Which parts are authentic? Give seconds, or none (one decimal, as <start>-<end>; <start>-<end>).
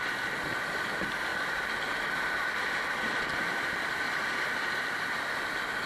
0.0-5.9